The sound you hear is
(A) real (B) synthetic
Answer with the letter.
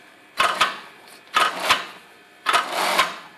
A